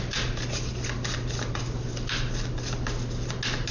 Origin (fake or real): real